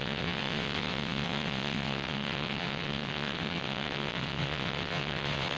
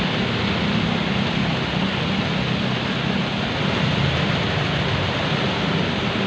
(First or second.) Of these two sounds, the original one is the second